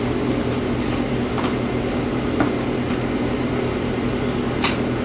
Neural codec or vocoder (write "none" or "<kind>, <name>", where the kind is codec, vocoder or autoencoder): none